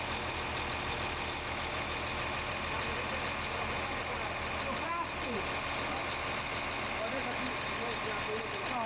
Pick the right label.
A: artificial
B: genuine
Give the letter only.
B